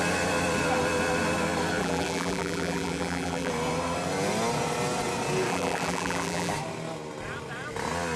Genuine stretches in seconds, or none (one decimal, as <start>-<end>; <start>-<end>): 0.0-1.8; 3.5-5.5; 6.5-8.2